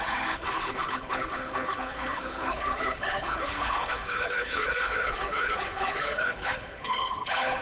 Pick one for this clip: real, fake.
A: fake